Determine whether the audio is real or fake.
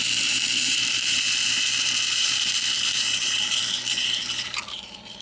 fake